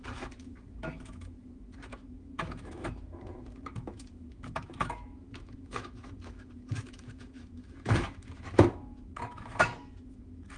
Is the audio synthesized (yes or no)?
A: yes